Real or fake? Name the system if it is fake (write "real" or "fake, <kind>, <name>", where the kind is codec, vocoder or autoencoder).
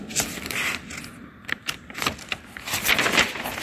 fake, vocoder, BigVGAN v2